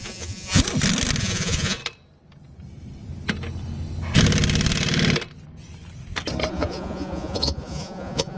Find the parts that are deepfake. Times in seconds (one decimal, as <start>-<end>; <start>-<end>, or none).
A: 0.0-0.6; 1.2-1.8; 6.5-8.4